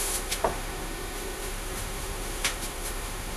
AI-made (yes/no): yes